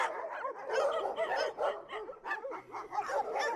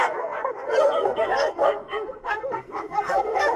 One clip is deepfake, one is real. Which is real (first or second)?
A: first